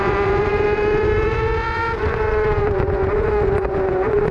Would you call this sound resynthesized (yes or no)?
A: yes